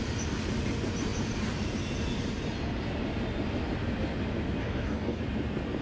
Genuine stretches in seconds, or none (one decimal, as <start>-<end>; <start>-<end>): 0.0-4.6; 5.2-5.8